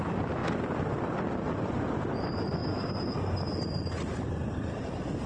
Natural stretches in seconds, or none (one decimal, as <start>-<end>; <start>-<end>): 0.0-5.3